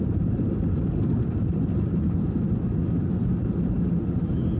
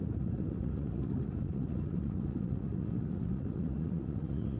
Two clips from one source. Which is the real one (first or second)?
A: first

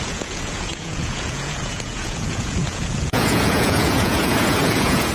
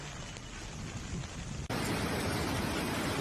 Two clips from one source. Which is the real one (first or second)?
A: second